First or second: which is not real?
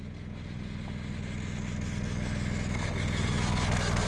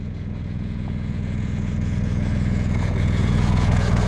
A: second